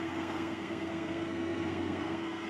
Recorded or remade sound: remade